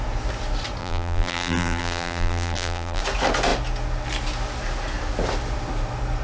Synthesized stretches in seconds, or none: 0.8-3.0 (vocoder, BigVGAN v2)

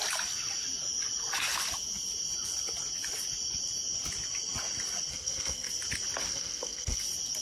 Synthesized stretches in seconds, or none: 5.1-5.7 (codec, SNAC); 6.3-7.0

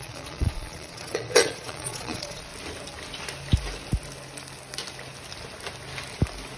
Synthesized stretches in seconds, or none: 0.0-2.5 (vocoder, Vocos)

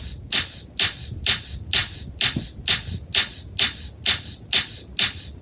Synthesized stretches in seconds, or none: none

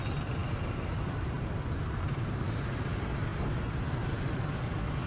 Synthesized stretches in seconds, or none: 0.4-2.6 (vocoder, BigVGAN v2)

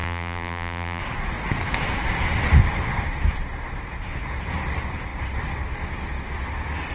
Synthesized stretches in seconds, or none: 0.0-1.0 (vocoder, BigVGAN v2)

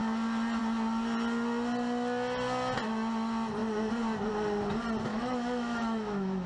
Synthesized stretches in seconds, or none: 5.1-6.5 (autoencoder, DAC-VAE)

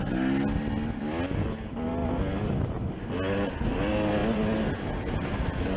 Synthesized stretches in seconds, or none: none